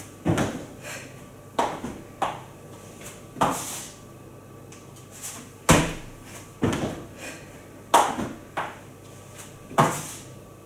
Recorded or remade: recorded